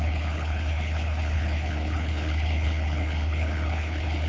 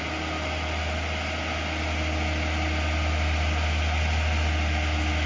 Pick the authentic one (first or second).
second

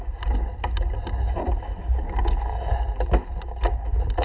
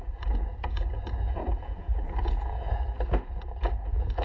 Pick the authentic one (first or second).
first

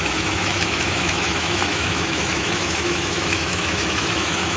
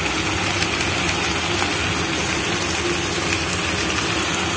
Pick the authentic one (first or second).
second